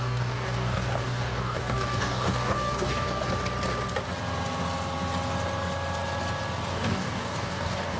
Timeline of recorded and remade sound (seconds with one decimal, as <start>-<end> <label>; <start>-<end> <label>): 0.0-3.2 remade; 3.2-6.7 recorded; 6.7-8.0 remade